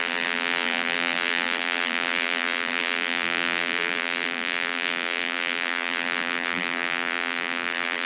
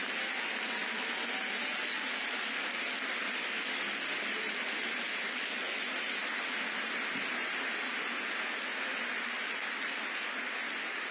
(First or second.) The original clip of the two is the second